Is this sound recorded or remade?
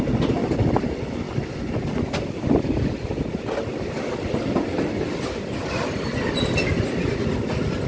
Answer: recorded